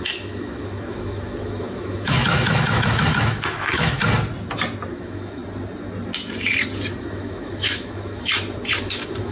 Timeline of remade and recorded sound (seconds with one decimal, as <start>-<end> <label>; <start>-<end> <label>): 0.0-4.0 remade; 4.0-4.9 recorded; 4.9-5.4 remade; 5.4-7.0 recorded; 7.0-8.3 remade; 8.3-8.8 recorded; 8.8-9.3 remade

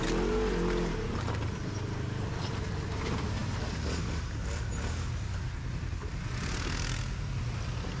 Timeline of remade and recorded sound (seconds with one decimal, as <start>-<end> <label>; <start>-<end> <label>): 0.0-8.0 recorded